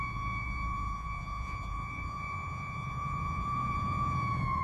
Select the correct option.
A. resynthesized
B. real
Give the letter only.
A